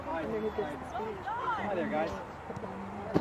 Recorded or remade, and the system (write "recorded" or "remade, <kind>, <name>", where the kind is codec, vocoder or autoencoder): remade, vocoder, BigVGAN v2